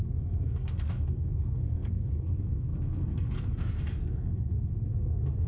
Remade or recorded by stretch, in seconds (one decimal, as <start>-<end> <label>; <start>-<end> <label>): 0.0-5.5 remade